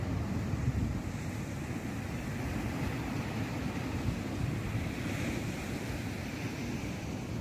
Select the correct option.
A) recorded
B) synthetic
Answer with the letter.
B